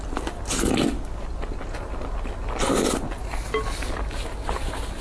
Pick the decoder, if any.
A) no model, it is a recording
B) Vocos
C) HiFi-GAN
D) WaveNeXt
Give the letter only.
A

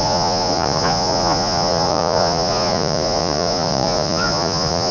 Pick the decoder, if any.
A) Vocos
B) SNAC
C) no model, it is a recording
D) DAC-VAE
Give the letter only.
A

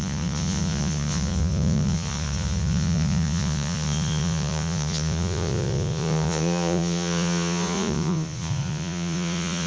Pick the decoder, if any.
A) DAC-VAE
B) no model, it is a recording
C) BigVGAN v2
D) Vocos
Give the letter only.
D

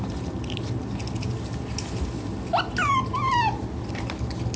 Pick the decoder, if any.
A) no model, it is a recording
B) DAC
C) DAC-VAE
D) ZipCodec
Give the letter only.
A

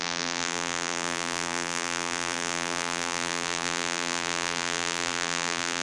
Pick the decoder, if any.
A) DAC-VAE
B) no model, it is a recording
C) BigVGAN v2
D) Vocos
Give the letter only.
C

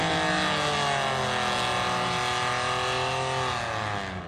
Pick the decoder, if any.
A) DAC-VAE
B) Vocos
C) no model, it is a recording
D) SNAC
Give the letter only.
C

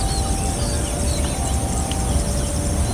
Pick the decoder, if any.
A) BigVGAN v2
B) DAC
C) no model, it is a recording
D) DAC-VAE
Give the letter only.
C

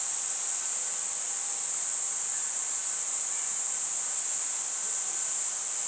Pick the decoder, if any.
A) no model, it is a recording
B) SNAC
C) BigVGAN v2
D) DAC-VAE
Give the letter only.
A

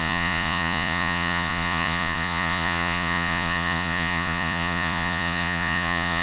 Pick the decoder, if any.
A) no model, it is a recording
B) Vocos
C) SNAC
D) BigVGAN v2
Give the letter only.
B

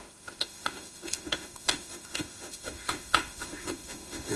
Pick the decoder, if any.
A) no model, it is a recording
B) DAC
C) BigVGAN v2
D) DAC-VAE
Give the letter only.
D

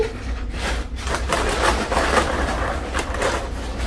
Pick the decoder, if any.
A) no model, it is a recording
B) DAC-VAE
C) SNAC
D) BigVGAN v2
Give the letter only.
D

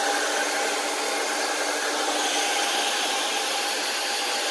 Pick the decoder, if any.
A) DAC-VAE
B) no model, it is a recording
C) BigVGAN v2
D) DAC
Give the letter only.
B